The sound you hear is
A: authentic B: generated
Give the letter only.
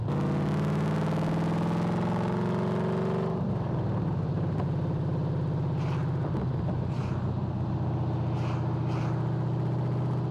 A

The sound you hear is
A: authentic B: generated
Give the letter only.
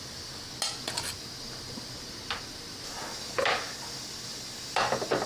A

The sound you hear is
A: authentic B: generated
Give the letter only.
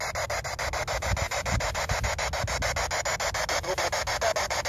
A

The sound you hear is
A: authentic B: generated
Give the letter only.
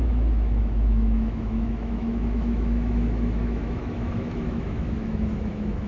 B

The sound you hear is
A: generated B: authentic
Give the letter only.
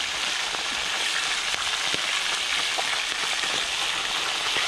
B